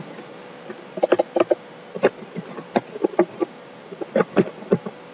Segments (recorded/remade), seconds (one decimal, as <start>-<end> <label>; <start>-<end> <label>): 0.0-1.0 recorded; 1.0-1.9 remade; 1.9-3.0 recorded; 3.0-4.0 remade; 4.0-5.1 recorded